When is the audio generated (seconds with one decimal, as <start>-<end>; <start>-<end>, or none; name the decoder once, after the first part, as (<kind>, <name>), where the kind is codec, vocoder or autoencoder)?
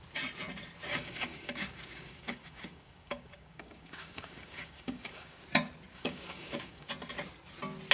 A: 0.9-5.4 (codec, DAC); 5.9-6.9